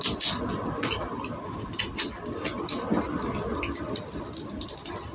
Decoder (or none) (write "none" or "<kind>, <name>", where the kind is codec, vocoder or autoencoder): none